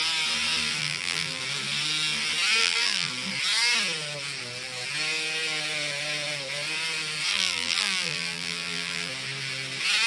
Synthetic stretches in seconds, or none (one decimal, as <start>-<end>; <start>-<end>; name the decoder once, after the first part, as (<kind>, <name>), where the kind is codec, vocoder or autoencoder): 0.8-1.4 (vocoder, BigVGAN v2); 2.6-3.1; 7.3-9.1